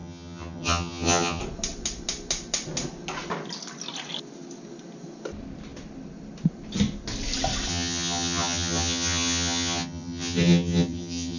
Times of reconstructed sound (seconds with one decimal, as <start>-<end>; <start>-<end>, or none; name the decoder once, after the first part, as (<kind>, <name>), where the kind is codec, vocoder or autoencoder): 0.0-1.4 (vocoder, HiFi-GAN); 7.7-11.4